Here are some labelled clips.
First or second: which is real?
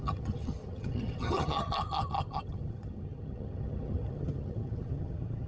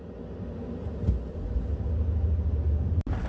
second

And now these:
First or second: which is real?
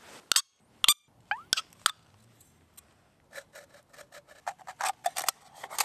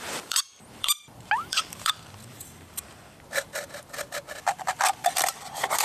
first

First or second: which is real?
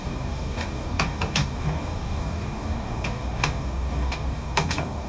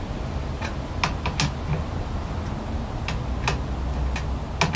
second